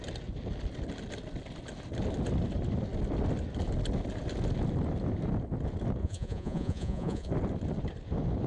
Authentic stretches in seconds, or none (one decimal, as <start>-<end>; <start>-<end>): 0.0-6.0; 7.3-8.5